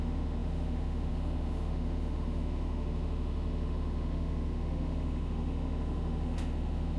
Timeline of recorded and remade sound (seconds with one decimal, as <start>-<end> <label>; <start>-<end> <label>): 0.0-7.0 remade